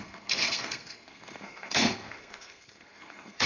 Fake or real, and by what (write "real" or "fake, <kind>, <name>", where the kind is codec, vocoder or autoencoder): fake, codec, SNAC